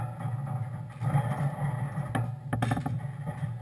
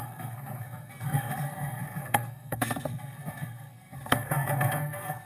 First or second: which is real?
first